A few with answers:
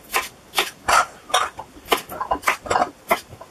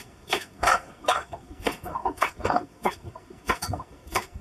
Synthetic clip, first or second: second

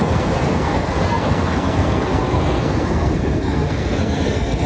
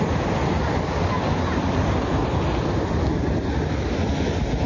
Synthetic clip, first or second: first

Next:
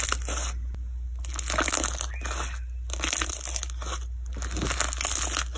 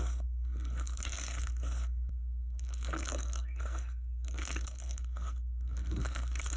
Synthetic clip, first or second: second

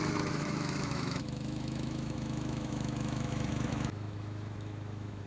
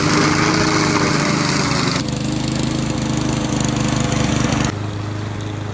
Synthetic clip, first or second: first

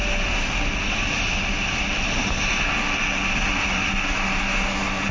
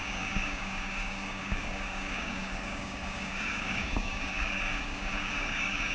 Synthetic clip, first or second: second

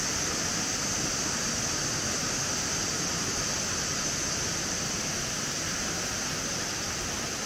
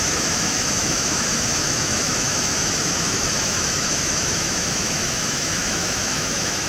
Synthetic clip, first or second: second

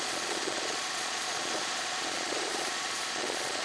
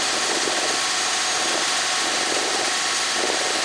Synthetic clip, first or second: first